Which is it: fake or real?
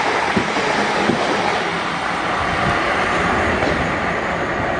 real